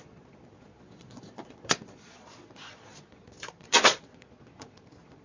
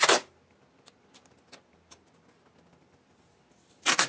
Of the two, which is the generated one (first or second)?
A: first